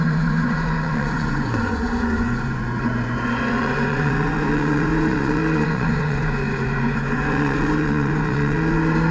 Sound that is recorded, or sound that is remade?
remade